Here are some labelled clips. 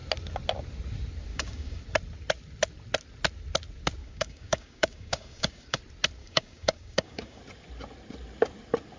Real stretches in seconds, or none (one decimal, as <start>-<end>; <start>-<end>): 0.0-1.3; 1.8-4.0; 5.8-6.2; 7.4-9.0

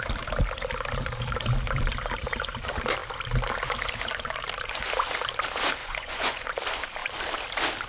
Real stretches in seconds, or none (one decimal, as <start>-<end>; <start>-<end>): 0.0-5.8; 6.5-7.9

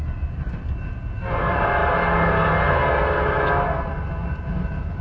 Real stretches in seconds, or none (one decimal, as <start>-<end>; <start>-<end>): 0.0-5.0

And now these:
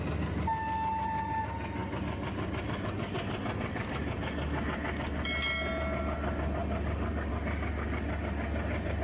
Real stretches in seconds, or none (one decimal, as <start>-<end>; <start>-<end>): 0.0-9.0

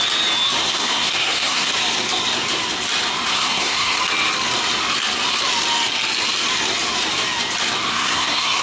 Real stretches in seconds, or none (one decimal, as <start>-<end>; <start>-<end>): 0.0-0.6; 1.7-3.3; 4.0-7.9

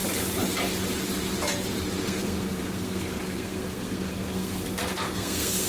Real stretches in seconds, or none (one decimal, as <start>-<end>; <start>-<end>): 0.0-2.0